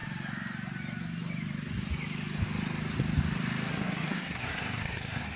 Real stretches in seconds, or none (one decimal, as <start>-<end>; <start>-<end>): 0.0-3.7